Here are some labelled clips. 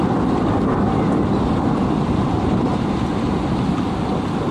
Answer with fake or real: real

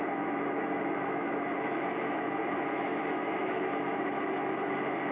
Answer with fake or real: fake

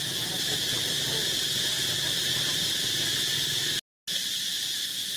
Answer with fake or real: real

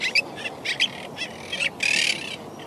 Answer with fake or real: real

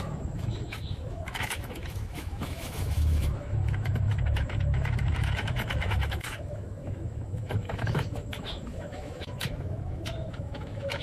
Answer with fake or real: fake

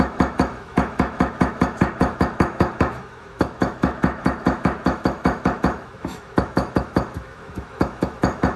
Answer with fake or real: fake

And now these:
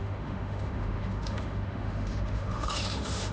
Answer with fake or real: fake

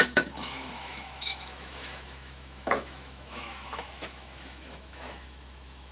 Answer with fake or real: fake